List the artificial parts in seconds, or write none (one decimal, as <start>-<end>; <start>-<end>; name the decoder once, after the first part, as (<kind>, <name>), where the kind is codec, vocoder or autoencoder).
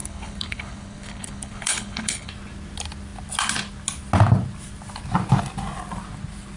0.0-2.3 (codec, HILCodec)